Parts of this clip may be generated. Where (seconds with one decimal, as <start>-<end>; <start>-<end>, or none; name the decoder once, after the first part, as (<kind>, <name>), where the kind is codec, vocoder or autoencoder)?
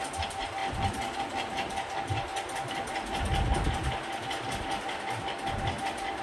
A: none